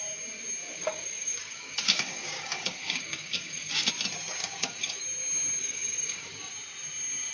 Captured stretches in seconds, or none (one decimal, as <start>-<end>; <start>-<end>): 0.0-0.6; 3.9-4.4; 5.0-5.6; 6.5-7.3